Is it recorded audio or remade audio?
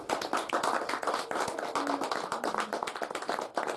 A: recorded